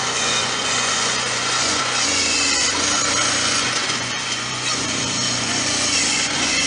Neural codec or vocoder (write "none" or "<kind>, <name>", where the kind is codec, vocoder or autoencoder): vocoder, Vocos